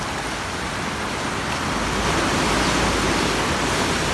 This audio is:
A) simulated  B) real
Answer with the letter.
B